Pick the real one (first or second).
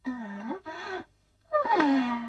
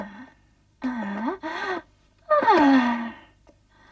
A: second